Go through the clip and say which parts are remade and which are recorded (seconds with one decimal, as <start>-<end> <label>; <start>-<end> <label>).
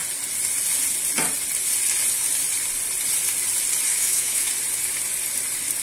0.0-3.9 recorded; 3.9-4.5 remade; 4.5-5.8 recorded